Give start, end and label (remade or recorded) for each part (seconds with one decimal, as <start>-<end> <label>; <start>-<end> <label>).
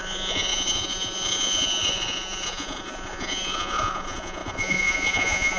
0.0-5.6 remade